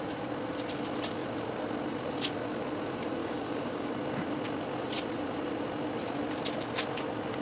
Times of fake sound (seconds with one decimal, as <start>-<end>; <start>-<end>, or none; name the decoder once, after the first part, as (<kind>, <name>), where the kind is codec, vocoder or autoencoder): 3.2-3.9 (codec, DAC)